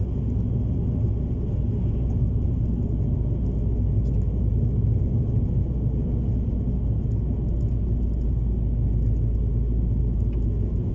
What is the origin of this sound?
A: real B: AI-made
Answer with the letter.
A